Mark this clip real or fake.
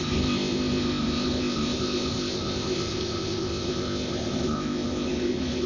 fake